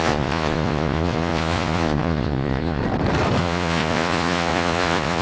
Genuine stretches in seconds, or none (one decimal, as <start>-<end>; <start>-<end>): 2.8-3.4